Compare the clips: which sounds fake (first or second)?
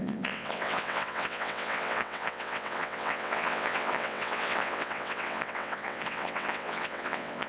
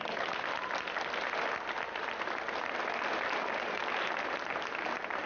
first